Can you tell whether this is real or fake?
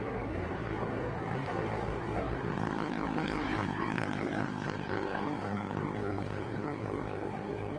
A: fake